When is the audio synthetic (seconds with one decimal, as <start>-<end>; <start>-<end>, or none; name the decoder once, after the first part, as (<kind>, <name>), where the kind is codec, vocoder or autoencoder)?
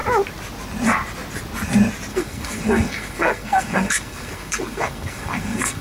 2.1-5.8 (codec, SNAC)